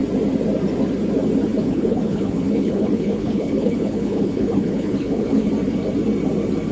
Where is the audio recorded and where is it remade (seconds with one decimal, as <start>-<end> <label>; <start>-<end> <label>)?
0.0-1.5 recorded; 1.5-5.5 remade; 5.5-6.7 recorded